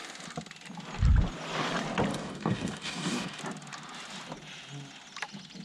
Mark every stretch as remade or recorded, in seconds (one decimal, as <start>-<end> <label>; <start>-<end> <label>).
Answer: 0.0-2.1 recorded; 2.1-3.4 remade; 3.4-5.6 recorded